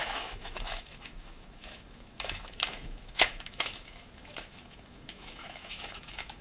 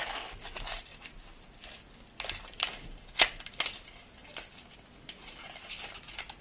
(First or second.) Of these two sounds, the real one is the second